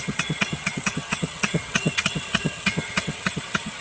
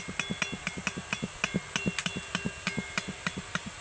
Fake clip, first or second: first